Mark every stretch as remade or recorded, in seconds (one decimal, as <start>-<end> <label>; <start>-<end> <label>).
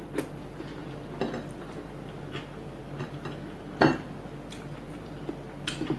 0.0-6.0 recorded